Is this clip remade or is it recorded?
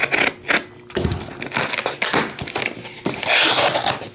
recorded